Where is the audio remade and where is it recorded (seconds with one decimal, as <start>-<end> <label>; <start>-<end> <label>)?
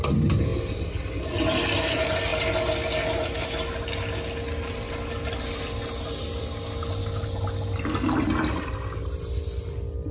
0.0-10.1 recorded